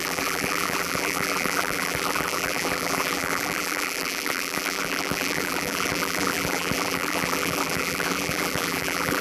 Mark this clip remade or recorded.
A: remade